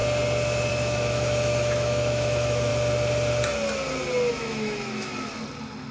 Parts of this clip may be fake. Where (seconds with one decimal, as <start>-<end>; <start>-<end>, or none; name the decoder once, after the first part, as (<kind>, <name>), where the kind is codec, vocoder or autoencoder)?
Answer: 0.7-2.7 (autoencoder, DAC-VAE); 4.3-5.1